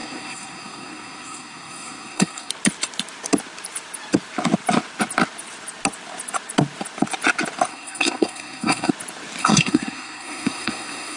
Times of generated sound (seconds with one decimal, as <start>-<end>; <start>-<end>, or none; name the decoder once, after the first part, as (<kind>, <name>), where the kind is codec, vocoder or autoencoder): 0.0-2.5 (codec, SNAC); 7.7-8.9; 9.4-11.2